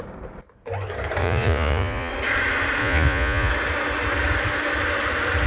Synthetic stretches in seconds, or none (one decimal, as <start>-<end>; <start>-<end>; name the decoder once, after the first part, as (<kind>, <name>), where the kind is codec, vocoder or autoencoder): 1.2-2.1 (vocoder, Vocos); 2.8-3.5